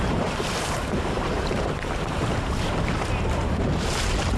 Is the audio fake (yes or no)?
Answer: yes